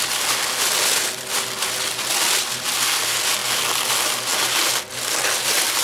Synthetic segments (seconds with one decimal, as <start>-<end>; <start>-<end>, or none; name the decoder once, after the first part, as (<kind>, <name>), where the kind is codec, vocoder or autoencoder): none